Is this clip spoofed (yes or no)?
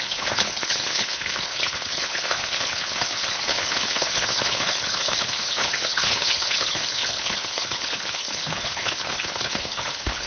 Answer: yes